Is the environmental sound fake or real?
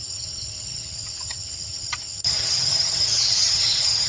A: fake